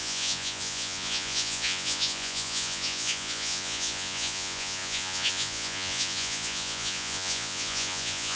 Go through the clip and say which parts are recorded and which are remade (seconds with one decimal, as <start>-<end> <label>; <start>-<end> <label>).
0.0-8.4 remade